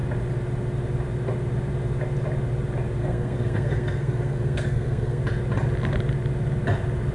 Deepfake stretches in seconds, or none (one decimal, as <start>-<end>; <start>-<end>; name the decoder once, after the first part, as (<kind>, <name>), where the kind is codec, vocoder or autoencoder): 3.0-5.2 (codec, SNAC)